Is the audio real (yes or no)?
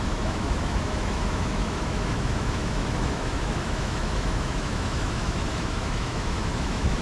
no